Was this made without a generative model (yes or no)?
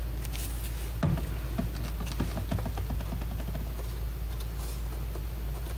yes